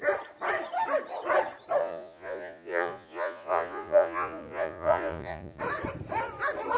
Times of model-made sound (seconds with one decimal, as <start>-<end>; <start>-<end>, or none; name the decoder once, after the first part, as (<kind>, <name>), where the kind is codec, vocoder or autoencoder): 1.8-5.6 (vocoder, Vocos)